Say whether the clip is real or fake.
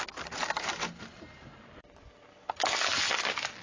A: real